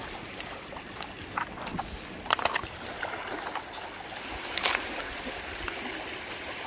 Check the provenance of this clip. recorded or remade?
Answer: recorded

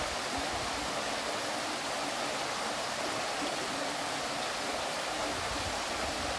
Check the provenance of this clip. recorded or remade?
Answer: recorded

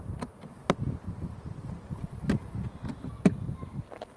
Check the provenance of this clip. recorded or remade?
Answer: recorded